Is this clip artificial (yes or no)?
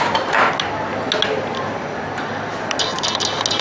no